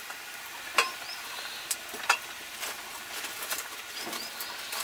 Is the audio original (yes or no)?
no